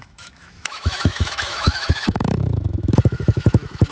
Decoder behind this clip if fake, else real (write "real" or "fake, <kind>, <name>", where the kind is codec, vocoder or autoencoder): fake, autoencoder, DAC-VAE